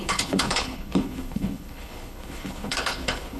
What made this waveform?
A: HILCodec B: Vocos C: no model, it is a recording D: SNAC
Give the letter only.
A